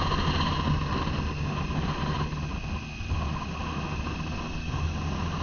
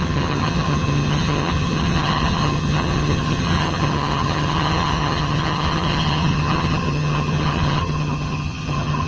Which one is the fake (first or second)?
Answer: second